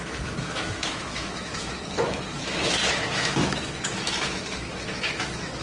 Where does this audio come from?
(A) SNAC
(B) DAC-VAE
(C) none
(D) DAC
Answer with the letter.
B